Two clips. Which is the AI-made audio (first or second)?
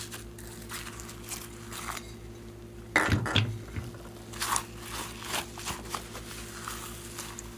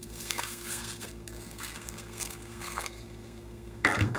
second